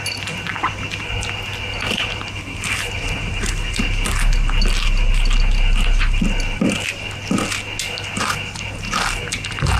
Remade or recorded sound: recorded